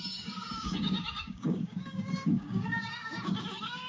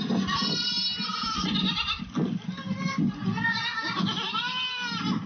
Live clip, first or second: second